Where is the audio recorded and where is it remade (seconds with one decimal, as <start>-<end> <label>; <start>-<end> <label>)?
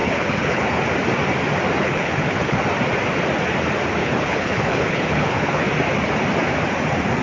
0.0-0.8 remade; 0.8-1.8 recorded; 1.8-2.6 remade; 2.6-4.0 recorded; 4.0-5.6 remade; 5.6-7.2 recorded